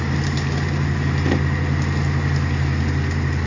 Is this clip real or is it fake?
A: real